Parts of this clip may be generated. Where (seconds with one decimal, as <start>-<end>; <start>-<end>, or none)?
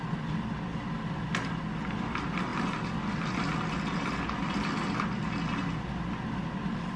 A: none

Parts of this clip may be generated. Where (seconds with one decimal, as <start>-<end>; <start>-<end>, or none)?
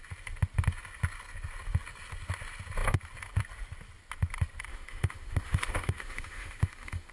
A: 4.7-7.1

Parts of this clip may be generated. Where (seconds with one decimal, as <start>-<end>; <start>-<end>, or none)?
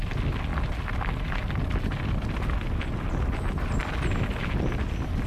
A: none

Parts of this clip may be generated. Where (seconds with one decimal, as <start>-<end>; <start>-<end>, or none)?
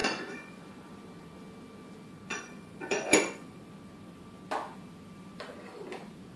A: 0.0-0.6; 2.3-3.6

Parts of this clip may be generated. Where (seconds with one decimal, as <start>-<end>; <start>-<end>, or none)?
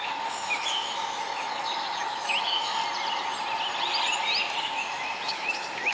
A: 0.0-2.8; 4.6-5.9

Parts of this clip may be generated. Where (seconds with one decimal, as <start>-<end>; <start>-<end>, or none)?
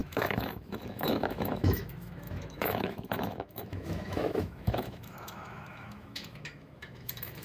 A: 0.0-7.4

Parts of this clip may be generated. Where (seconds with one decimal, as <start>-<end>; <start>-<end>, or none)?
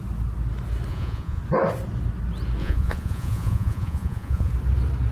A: 0.9-1.4; 2.6-4.5